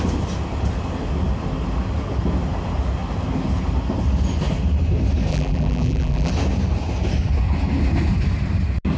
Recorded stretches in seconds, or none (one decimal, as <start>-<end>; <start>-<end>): 0.0-5.3; 6.3-9.0